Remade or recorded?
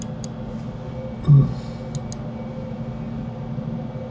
recorded